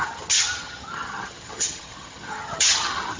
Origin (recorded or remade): remade